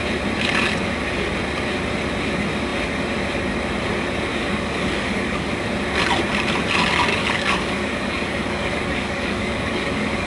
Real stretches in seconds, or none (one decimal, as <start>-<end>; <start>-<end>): 0.0-4.3; 5.5-7.1